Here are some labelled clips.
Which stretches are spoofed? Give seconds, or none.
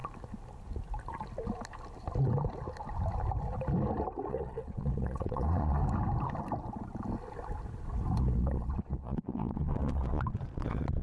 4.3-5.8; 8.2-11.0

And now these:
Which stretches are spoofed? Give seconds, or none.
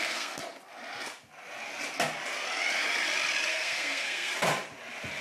0.0-0.4; 3.5-4.3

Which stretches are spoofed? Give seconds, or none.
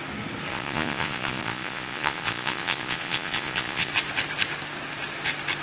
0.5-3.9